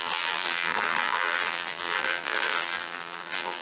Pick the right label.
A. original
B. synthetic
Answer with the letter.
B